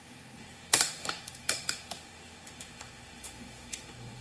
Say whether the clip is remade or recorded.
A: remade